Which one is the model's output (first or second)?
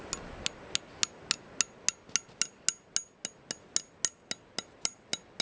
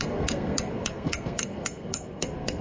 second